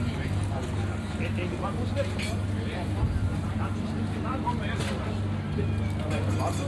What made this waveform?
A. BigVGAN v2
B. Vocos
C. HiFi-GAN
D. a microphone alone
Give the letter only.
D